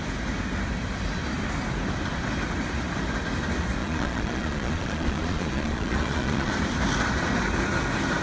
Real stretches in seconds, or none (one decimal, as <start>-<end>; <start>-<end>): 0.0-3.8; 6.5-8.2